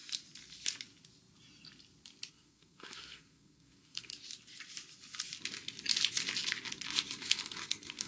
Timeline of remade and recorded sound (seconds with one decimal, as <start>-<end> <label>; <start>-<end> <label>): 0.0-2.3 recorded; 2.3-4.1 remade; 4.1-7.1 recorded; 7.1-8.1 remade